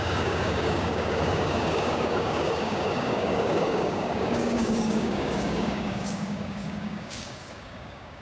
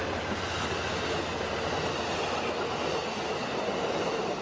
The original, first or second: second